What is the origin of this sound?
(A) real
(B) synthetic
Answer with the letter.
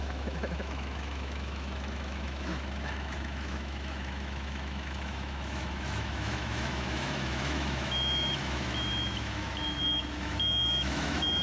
B